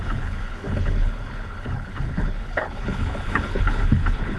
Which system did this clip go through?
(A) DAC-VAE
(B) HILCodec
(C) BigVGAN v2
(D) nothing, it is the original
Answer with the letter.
B